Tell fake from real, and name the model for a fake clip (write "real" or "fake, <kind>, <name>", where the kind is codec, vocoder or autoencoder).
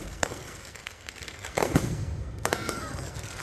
fake, codec, SNAC